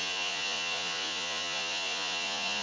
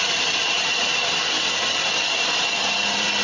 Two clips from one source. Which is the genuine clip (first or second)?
second